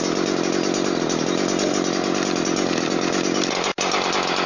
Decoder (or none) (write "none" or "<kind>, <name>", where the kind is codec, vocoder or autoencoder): none